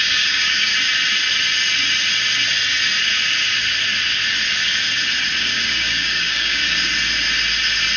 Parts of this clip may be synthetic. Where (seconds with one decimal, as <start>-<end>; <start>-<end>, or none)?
0.0-0.7; 5.4-6.6